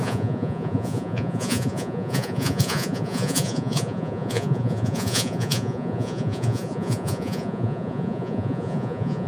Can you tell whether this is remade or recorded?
remade